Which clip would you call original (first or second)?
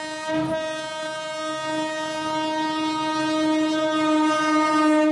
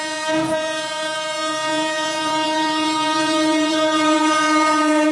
first